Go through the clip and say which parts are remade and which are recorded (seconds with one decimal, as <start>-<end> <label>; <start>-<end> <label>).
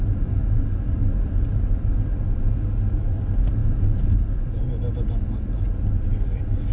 0.0-6.7 recorded